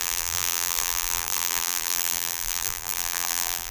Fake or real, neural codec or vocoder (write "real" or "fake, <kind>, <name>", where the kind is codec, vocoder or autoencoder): fake, vocoder, BigVGAN v2